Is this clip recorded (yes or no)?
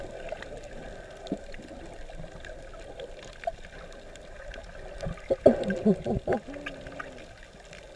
yes